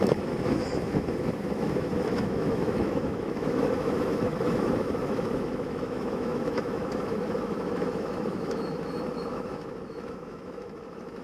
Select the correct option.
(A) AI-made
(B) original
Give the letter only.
A